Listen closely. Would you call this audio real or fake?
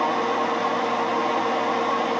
real